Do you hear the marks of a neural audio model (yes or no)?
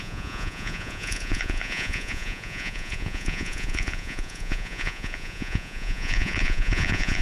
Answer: yes